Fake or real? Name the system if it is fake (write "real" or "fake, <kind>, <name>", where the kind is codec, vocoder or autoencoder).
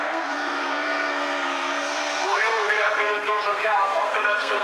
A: fake, codec, SNAC